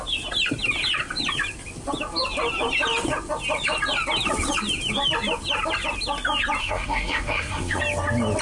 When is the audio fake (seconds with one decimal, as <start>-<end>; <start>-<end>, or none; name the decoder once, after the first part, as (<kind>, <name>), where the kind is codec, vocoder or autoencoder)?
6.6-7.8 (codec, SNAC)